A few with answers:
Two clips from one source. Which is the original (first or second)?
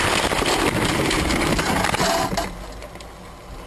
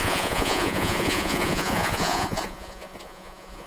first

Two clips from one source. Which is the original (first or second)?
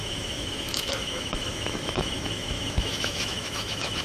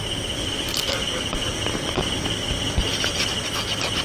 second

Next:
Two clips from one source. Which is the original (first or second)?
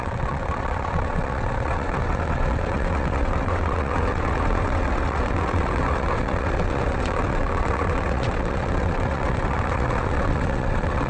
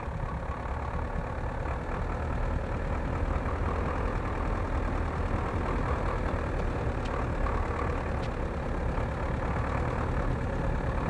second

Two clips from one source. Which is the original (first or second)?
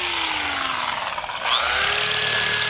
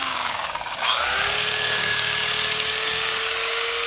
first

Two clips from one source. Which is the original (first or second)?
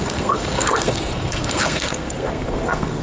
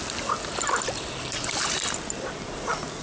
second